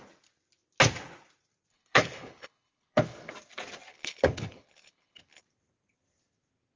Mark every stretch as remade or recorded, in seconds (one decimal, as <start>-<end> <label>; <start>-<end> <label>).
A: 0.0-1.7 recorded; 1.7-3.3 remade; 3.3-3.9 recorded; 3.9-5.4 remade; 5.4-6.8 recorded